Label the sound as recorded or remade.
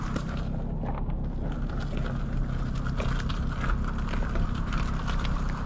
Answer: recorded